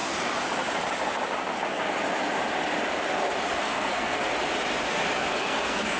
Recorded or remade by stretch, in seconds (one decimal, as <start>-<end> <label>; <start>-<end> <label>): 0.0-3.6 recorded; 3.6-4.3 remade; 4.3-5.2 recorded; 5.2-6.0 remade